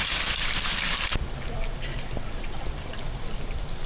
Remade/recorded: recorded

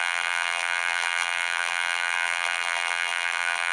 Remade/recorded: remade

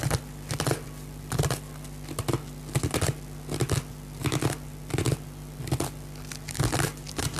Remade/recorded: recorded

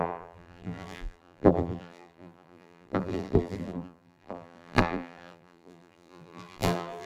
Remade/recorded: remade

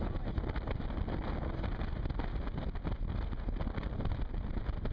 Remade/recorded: recorded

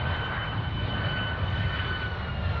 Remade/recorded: recorded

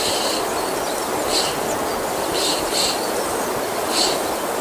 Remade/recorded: recorded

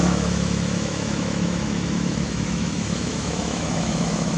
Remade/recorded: remade